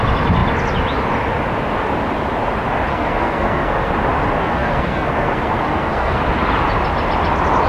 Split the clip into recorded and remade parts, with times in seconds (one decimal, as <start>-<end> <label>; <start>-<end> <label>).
0.0-2.9 recorded; 2.9-3.9 remade; 3.9-4.4 recorded; 4.4-6.2 remade; 6.2-7.7 recorded